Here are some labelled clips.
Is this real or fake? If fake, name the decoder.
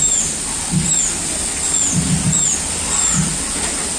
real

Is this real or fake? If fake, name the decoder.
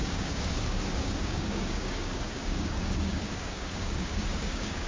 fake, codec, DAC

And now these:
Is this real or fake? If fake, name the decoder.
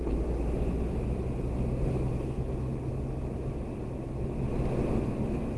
real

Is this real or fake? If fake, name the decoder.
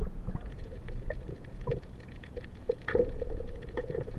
fake, vocoder, Vocos